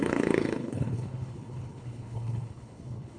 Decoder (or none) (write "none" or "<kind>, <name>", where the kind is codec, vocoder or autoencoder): codec, HILCodec